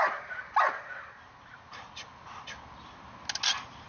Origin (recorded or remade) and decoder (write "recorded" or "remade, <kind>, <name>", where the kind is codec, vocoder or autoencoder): recorded